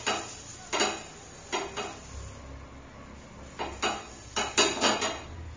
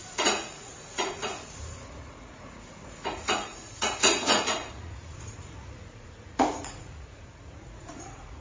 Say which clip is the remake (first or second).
second